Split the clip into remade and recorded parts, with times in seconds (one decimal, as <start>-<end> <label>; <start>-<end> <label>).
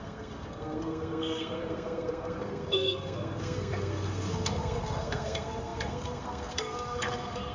0.0-7.5 remade